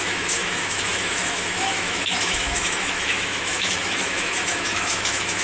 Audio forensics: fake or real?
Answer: fake